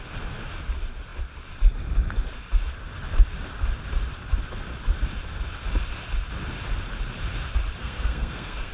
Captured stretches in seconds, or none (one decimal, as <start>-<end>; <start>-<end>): 0.0-7.8